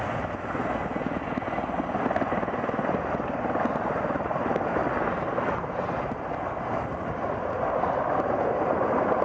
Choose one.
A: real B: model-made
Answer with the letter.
A